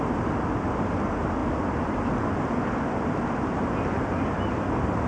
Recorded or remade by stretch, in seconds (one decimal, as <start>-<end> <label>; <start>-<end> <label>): 0.0-5.1 recorded

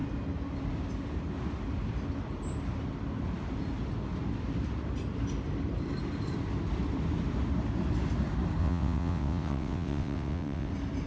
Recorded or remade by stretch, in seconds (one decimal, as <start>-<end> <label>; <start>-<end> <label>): 0.0-8.6 recorded; 8.6-10.7 remade; 10.7-11.1 recorded

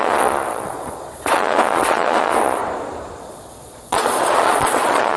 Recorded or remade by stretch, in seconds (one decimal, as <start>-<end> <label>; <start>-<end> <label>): 0.0-2.6 remade; 2.6-3.2 recorded; 3.2-5.2 remade

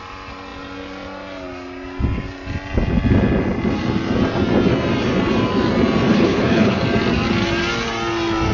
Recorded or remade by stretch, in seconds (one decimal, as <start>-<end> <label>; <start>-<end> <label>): 0.0-6.1 recorded; 6.1-6.8 remade; 6.8-8.5 recorded

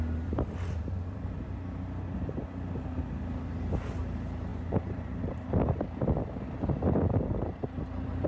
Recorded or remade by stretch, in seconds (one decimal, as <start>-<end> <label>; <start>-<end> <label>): 0.0-4.5 recorded; 4.5-5.2 remade; 5.2-8.3 recorded

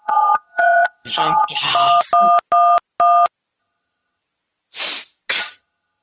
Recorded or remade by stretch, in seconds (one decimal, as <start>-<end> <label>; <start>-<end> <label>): 0.0-1.6 remade; 1.6-3.6 recorded; 3.6-4.2 remade; 4.2-5.4 recorded; 5.4-6.0 remade

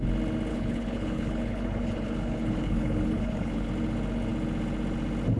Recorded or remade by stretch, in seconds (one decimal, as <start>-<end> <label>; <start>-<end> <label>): 0.0-0.5 recorded; 0.5-3.7 remade; 3.7-5.4 recorded

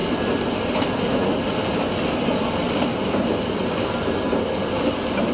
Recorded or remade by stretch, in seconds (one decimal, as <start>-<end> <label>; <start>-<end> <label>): 0.0-5.3 recorded